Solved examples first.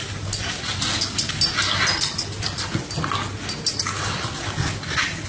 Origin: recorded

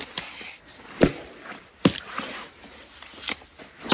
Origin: recorded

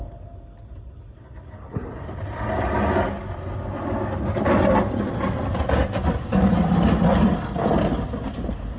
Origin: recorded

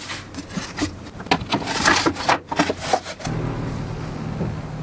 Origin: recorded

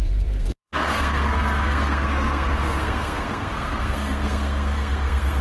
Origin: remade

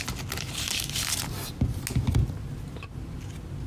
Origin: recorded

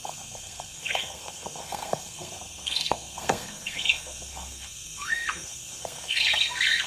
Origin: remade